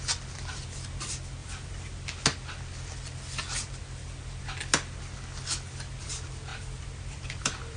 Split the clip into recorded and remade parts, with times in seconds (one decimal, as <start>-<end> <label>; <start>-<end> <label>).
0.0-1.4 recorded; 1.4-1.9 remade; 1.9-6.5 recorded; 6.5-7.8 remade